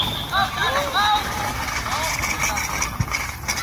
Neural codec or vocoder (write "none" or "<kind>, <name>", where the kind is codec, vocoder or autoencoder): none